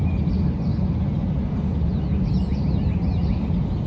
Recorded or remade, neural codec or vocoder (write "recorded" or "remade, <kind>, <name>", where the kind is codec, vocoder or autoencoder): recorded